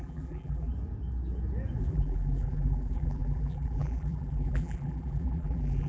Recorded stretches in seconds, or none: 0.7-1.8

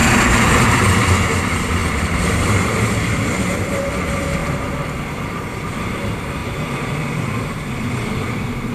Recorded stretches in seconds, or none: 0.9-1.8; 3.8-4.4; 5.0-6.4; 7.2-8.7

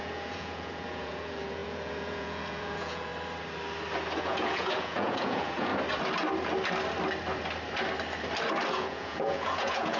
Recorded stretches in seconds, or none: 3.1-4.2; 5.7-8.7